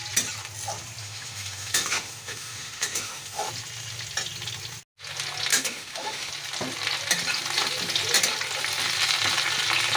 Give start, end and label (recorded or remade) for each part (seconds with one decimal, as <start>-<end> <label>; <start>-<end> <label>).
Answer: 0.0-1.0 recorded; 1.0-3.5 remade; 3.5-5.5 recorded; 5.5-6.3 remade; 6.3-10.0 recorded